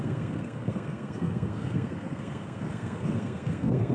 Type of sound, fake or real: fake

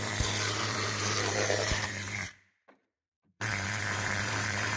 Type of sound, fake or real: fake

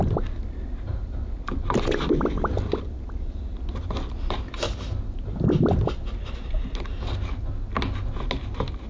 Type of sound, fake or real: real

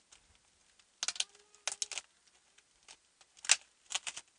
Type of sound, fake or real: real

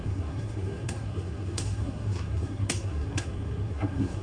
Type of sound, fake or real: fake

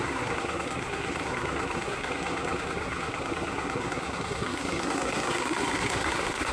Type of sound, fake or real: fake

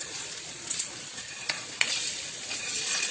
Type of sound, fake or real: fake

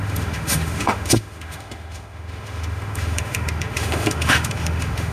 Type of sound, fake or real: fake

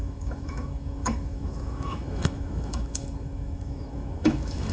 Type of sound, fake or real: fake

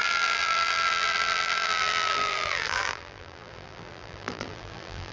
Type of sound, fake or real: fake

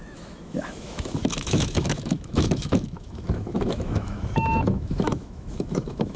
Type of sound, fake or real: fake